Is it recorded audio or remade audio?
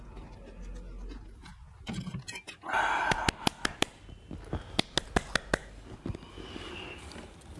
recorded